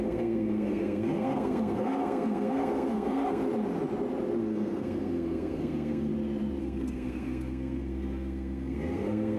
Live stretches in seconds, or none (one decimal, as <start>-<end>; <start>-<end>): 3.4-4.4; 6.1-6.6